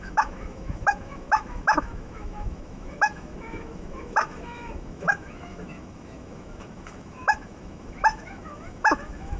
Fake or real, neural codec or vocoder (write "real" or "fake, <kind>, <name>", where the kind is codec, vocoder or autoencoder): fake, autoencoder, DAC-VAE